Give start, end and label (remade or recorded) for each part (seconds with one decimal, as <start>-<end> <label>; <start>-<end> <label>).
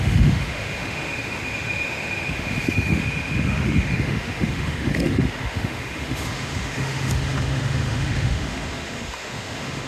0.0-9.9 remade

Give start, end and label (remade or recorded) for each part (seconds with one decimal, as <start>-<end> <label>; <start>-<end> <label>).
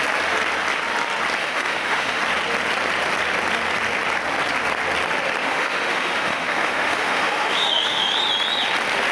0.0-1.4 recorded; 1.4-2.2 remade; 2.2-5.4 recorded; 5.4-8.1 remade; 8.1-9.1 recorded